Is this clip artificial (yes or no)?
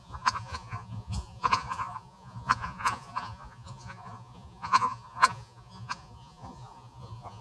yes